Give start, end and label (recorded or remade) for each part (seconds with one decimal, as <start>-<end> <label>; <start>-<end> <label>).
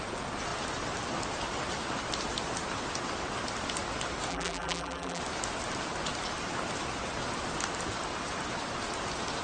0.0-4.3 recorded; 4.3-5.2 remade; 5.2-9.4 recorded